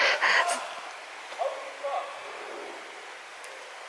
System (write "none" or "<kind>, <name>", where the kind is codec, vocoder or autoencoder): none